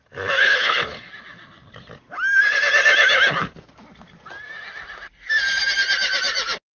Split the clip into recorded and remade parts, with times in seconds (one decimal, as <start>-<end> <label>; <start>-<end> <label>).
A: 0.0-0.4 recorded; 0.4-1.1 remade; 1.1-6.8 recorded